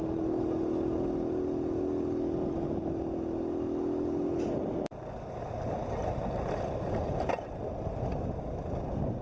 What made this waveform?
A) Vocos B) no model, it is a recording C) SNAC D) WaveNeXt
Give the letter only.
B